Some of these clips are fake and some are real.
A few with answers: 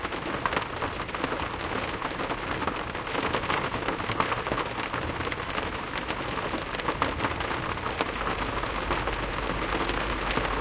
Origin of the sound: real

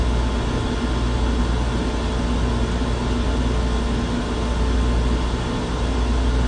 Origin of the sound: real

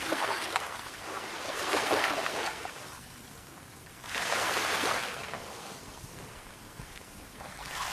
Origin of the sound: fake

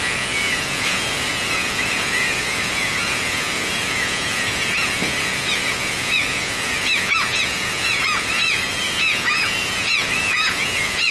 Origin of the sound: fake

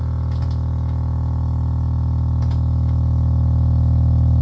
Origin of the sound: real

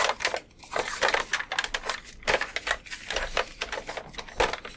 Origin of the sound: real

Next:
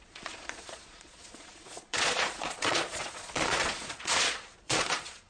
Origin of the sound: fake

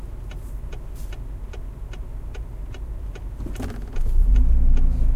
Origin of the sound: real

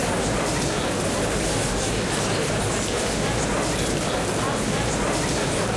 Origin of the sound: real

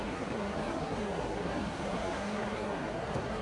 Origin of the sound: fake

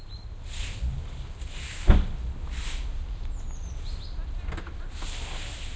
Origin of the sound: real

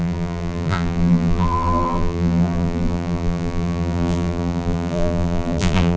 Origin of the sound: fake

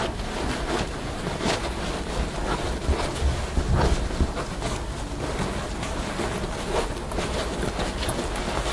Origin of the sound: real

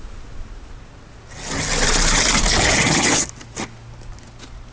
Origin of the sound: real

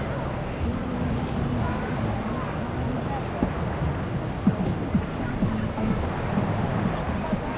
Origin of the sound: real